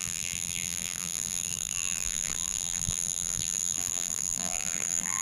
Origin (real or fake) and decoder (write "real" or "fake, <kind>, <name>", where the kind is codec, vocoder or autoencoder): fake, vocoder, BigVGAN v2